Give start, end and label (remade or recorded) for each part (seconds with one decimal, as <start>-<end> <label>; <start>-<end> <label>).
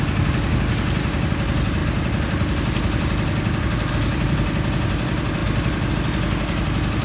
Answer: 0.0-7.0 recorded